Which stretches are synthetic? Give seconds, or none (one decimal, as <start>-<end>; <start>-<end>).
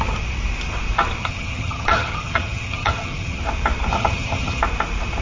1.2-3.4; 3.9-4.6